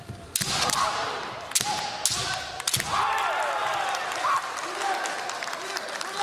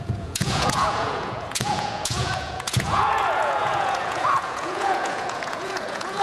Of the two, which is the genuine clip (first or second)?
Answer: first